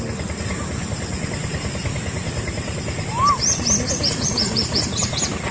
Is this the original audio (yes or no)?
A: yes